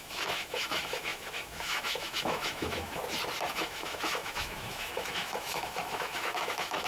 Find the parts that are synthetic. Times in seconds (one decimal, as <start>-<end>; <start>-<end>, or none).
0.0-3.0; 3.5-6.9